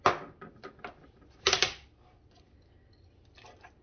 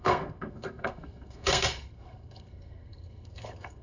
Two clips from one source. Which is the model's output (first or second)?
second